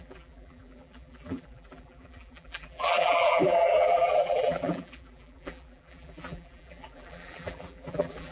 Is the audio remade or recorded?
remade